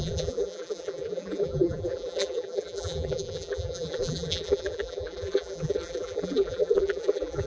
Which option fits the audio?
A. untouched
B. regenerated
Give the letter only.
B